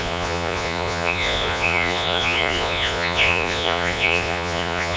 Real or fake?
fake